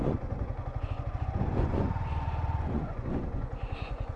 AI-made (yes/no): yes